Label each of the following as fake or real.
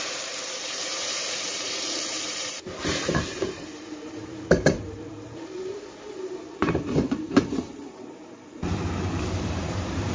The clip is fake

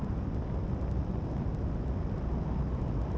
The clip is real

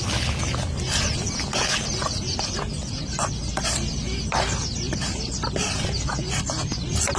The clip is real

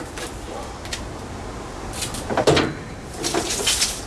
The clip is fake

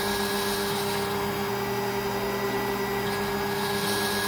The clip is real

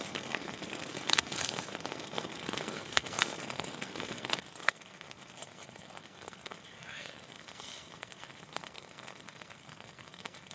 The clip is fake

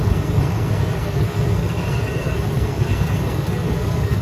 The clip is fake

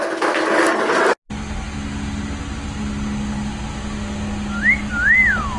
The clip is real